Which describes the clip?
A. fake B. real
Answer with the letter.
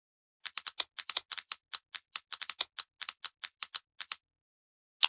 B